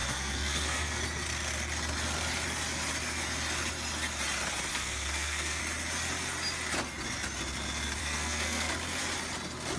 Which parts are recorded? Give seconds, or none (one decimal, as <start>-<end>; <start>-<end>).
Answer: 1.0-4.7; 5.6-8.0; 8.7-9.8